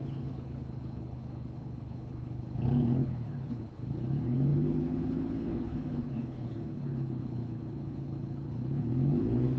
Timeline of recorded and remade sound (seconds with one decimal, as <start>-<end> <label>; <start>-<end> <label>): 0.0-9.6 remade